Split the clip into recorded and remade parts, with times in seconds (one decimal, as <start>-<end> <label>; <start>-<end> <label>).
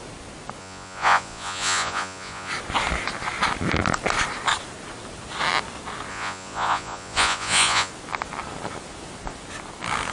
0.0-0.6 recorded; 0.6-2.5 remade; 2.5-6.1 recorded; 6.1-7.9 remade; 7.9-10.1 recorded